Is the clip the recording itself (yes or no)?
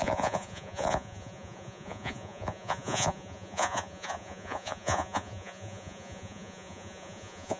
no